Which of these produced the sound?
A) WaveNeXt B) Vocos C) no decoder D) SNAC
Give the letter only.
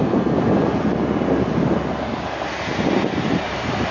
C